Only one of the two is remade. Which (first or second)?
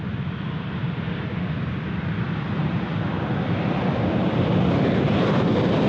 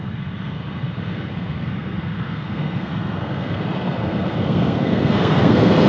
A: second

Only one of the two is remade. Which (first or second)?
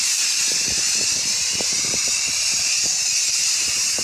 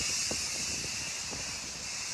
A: first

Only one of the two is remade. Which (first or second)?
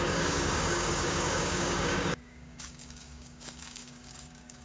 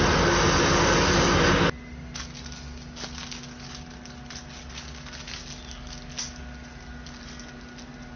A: first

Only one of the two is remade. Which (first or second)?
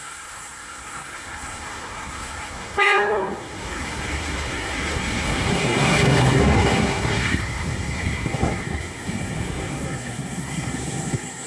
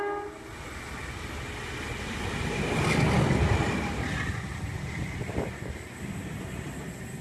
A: first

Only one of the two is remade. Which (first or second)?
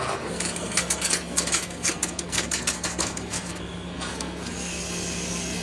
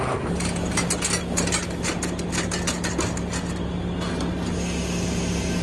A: first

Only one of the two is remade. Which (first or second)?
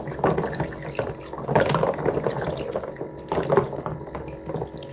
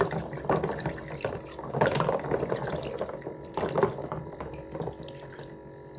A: second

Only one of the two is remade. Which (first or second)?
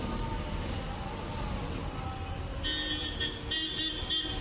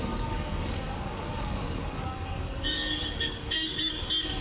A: second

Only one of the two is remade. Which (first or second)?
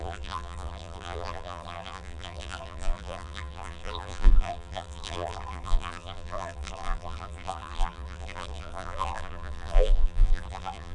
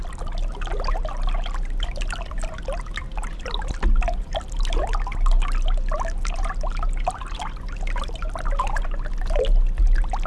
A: first